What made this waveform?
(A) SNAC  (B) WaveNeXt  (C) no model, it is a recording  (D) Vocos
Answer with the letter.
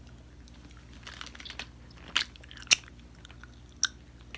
C